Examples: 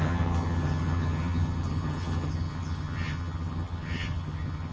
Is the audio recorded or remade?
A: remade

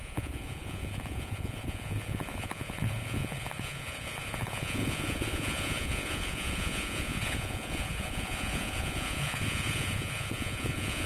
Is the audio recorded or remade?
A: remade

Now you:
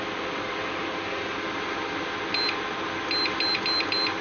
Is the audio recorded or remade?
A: recorded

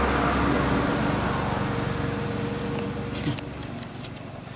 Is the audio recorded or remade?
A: recorded